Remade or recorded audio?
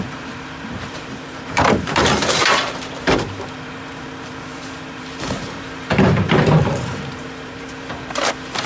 remade